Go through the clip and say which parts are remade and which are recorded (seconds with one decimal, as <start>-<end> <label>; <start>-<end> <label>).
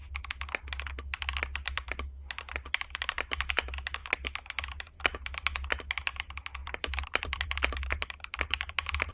0.0-6.6 recorded; 6.6-9.1 remade